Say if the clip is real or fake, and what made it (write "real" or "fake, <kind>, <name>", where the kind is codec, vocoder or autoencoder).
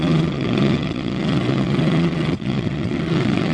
fake, vocoder, WaveNeXt